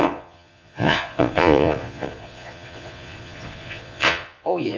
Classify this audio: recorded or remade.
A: remade